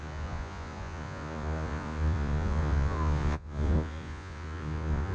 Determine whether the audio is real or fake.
fake